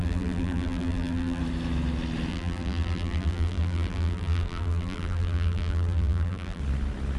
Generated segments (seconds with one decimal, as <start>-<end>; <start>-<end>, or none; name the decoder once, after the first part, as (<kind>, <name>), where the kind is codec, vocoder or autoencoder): 0.0-1.4 (vocoder, BigVGAN v2); 2.3-6.6